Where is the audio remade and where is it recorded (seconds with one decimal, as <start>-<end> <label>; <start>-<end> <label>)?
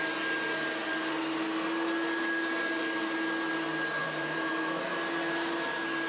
0.0-4.0 recorded; 4.0-4.8 remade; 4.8-6.1 recorded